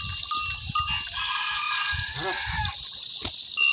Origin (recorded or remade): recorded